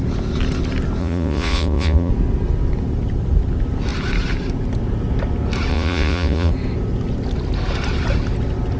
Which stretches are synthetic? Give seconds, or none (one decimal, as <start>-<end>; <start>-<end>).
1.0-2.1; 5.7-6.5